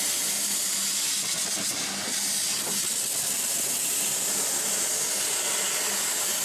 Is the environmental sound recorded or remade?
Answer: recorded